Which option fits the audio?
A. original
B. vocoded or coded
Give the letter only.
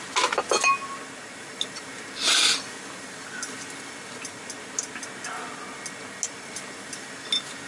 A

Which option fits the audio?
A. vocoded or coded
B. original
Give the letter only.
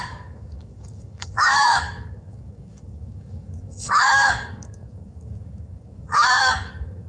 A